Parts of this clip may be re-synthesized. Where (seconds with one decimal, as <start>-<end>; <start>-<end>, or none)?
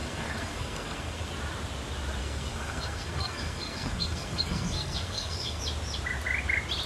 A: 0.0-1.3; 2.2-5.6